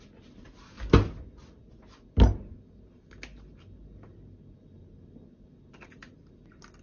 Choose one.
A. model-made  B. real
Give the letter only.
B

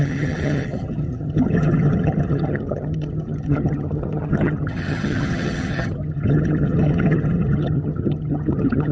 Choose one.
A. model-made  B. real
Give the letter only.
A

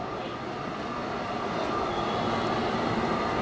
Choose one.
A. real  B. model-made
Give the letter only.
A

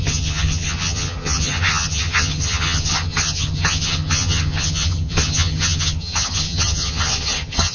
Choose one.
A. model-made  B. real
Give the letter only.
A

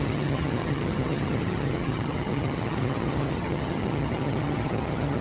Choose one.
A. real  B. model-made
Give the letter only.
B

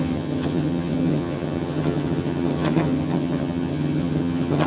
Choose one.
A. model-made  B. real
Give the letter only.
A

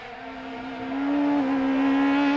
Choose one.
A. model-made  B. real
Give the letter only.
B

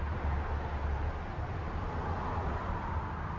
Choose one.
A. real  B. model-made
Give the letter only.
A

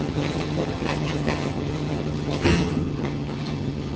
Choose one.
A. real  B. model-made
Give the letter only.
B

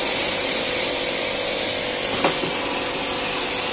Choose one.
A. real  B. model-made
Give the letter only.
A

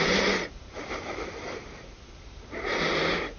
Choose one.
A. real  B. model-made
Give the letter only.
A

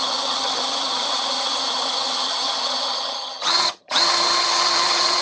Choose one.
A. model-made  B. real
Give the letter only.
A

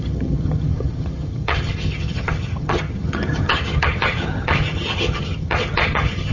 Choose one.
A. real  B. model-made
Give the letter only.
B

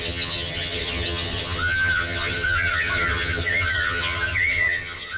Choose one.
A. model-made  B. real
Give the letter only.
A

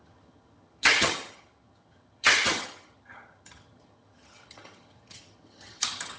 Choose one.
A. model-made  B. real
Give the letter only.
A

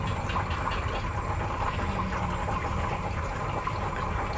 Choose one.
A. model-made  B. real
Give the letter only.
B